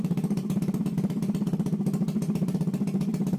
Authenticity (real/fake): fake